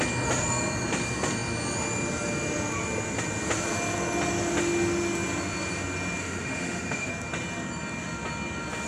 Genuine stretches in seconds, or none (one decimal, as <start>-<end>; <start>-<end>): 0.0-6.2; 7.1-8.9